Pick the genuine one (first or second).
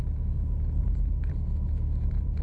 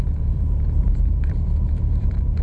first